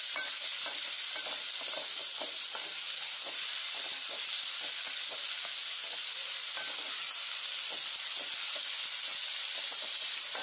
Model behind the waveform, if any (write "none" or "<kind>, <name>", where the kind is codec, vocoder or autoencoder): none